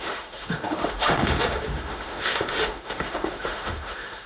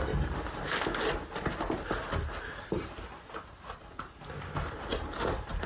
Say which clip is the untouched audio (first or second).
second